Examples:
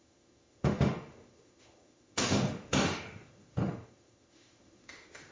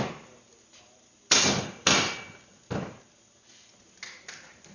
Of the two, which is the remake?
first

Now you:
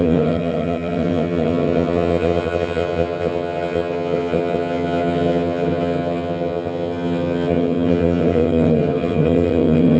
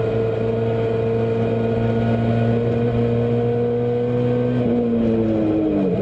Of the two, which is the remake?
first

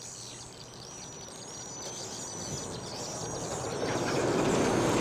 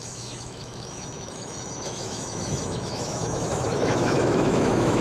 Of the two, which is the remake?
second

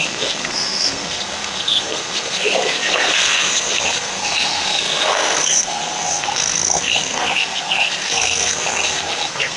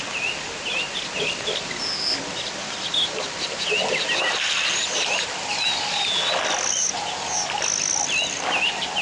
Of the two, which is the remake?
first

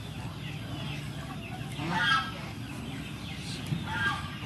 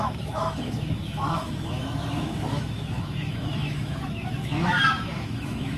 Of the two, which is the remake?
second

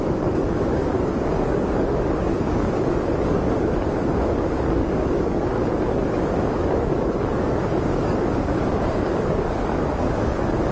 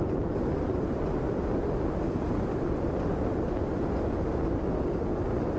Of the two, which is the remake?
first